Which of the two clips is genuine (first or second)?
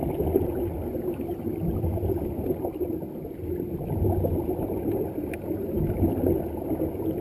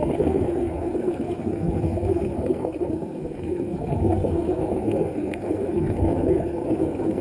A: first